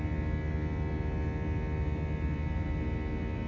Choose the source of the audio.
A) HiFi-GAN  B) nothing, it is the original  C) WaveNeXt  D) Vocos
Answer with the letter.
B